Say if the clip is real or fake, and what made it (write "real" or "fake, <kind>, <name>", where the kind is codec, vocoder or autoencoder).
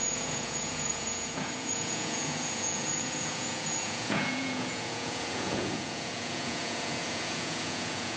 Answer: fake, vocoder, Vocos